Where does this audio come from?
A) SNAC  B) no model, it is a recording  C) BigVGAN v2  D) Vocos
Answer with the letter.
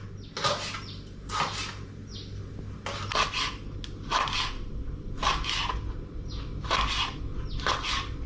B